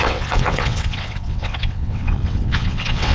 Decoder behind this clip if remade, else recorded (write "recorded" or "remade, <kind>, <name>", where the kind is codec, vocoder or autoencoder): remade, vocoder, WaveNeXt